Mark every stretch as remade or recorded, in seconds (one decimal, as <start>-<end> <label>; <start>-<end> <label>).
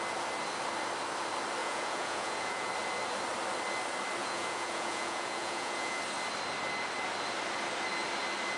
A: 0.0-1.6 recorded; 1.6-2.7 remade; 2.7-4.2 recorded; 4.2-6.0 remade; 6.0-8.6 recorded